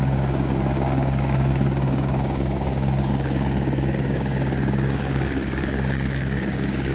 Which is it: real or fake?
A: fake